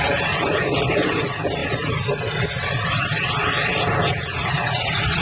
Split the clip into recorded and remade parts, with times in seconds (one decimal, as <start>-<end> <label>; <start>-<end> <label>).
0.0-1.6 remade; 1.6-2.3 recorded; 2.3-3.0 remade; 3.0-4.3 recorded; 4.3-5.2 remade